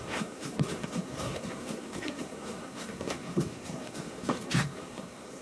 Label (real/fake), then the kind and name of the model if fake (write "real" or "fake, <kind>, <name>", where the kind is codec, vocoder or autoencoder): fake, codec, SNAC